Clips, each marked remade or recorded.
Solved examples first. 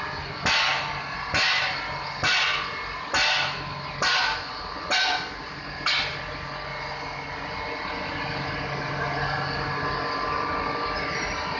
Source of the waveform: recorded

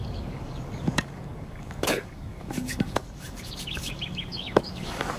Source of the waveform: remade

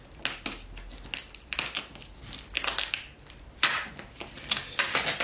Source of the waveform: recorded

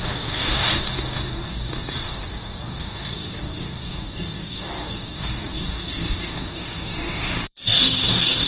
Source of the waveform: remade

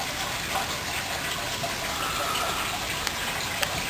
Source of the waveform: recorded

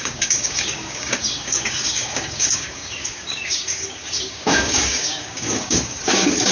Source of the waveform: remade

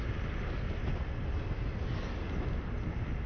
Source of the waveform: recorded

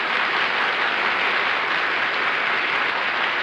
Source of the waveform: recorded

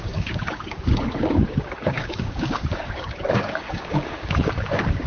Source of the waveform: remade